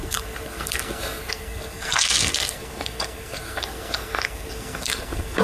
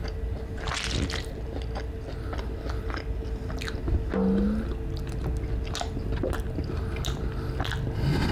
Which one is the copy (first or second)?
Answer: first